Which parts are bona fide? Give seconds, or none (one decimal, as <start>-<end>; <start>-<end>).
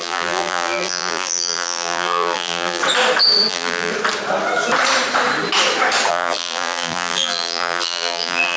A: 2.8-3.5; 3.9-6.1